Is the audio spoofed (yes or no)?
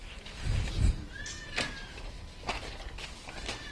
no